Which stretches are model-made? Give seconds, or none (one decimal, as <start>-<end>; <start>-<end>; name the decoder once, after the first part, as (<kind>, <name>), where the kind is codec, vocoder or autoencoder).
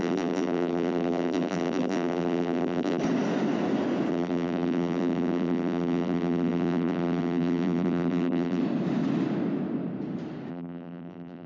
0.0-3.0 (vocoder, BigVGAN v2); 4.1-8.6; 10.5-11.5